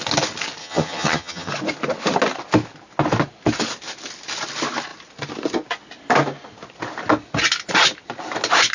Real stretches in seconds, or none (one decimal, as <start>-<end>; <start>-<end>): 0.0-0.6; 1.5-8.7